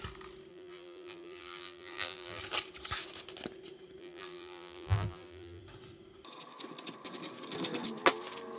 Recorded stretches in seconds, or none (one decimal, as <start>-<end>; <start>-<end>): 0.0-0.5; 2.4-4.0; 5.6-8.6